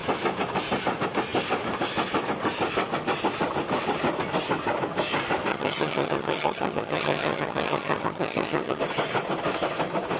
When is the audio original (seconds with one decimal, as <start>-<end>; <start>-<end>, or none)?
0.0-5.5; 8.8-10.2